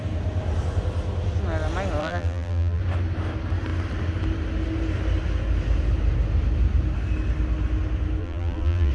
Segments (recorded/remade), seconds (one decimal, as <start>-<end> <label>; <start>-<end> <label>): 0.0-2.0 recorded; 2.0-2.8 remade; 2.8-8.2 recorded; 8.2-8.9 remade